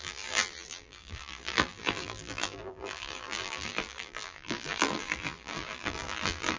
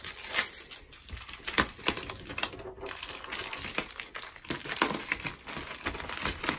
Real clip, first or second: second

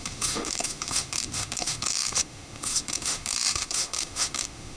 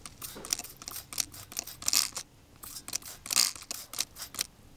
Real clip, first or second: second